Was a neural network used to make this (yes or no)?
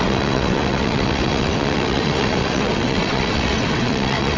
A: yes